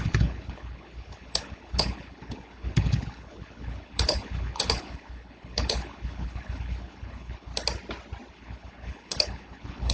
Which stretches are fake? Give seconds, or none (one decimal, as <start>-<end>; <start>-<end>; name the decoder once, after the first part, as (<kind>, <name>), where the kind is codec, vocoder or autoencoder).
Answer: 0.0-7.5 (codec, HILCodec); 8.3-9.9

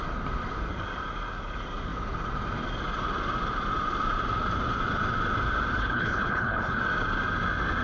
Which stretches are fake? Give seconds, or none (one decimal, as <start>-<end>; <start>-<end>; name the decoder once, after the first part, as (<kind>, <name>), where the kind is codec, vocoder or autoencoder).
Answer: 5.8-6.8 (codec, HILCodec)